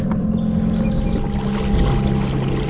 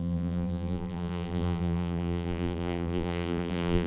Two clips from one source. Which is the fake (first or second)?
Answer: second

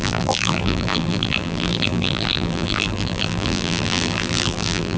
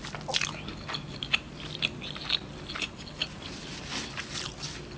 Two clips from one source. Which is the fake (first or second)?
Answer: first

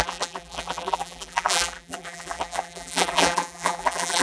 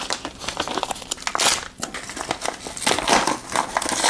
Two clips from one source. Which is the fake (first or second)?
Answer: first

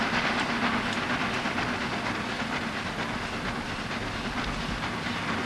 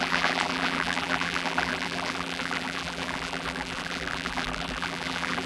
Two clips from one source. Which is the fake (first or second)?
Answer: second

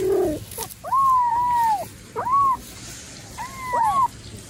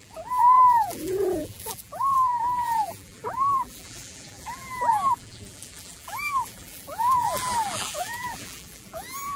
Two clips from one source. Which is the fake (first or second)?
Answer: second